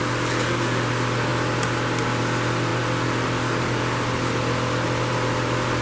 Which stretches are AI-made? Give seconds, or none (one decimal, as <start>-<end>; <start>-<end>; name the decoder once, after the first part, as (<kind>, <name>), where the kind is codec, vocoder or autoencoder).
none